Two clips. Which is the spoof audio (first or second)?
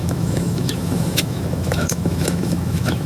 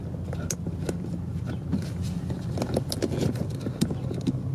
first